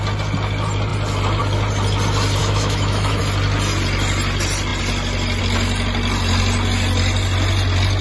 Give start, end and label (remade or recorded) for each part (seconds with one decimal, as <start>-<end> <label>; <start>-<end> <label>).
0.0-2.4 recorded; 2.4-3.2 remade; 3.2-8.0 recorded